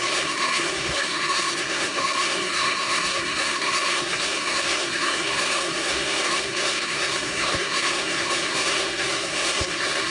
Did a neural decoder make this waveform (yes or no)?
yes